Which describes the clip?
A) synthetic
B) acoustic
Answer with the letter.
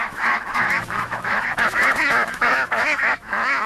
A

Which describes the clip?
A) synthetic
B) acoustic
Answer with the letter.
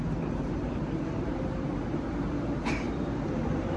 A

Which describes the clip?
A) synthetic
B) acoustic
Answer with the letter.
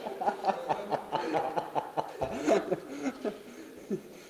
B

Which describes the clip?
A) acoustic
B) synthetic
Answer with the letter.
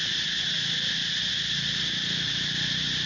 A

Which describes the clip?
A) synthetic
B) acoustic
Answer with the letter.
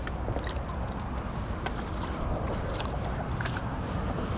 B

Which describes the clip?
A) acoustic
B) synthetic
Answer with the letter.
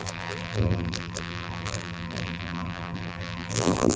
B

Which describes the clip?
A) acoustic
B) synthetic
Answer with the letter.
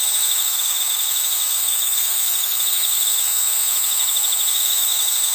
B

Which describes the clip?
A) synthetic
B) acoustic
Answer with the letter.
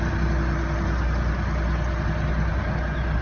B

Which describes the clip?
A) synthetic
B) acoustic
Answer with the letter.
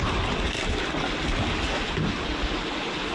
B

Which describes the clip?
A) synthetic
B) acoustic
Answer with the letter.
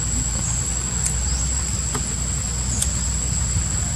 B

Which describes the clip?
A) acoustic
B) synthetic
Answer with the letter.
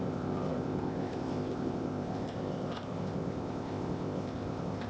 B